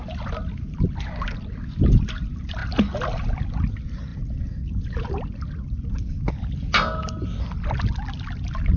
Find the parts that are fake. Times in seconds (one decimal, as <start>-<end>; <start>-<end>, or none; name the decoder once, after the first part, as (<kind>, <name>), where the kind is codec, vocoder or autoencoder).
none